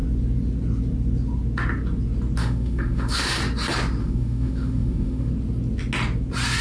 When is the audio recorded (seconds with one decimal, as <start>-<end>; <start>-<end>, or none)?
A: 0.0-2.4; 3.4-4.0; 5.3-6.6